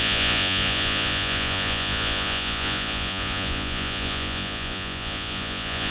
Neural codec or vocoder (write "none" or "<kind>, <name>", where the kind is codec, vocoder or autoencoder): vocoder, Vocos